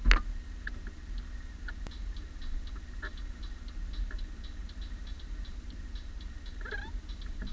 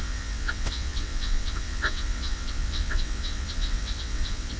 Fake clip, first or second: second